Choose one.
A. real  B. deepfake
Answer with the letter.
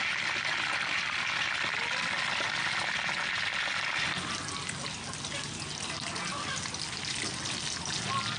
A